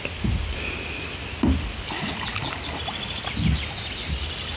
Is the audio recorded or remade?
recorded